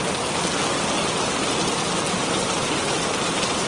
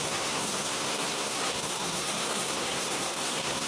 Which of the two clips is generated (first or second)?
second